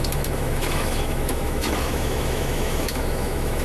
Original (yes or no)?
no